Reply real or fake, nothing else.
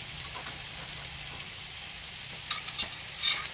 real